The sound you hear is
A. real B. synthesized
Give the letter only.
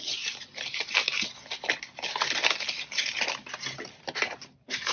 A